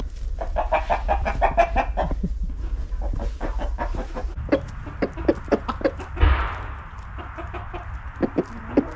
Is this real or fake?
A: real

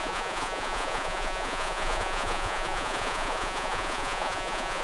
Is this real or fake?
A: fake